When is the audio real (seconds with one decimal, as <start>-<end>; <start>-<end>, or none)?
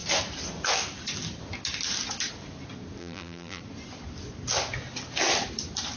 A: 0.0-3.0; 3.6-6.0